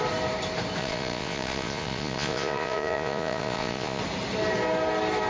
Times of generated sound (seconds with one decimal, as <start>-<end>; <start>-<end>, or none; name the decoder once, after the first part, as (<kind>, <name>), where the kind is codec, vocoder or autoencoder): 0.8-4.0 (vocoder, Vocos)